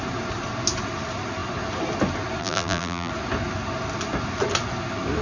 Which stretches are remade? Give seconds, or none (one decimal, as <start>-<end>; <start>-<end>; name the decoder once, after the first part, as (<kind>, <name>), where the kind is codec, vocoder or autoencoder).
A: 2.4-3.1 (vocoder, BigVGAN v2)